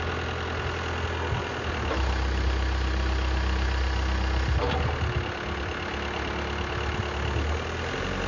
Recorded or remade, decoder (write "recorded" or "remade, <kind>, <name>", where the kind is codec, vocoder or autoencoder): recorded